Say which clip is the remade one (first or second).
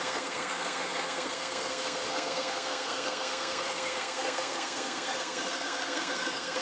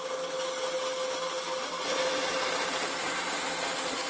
first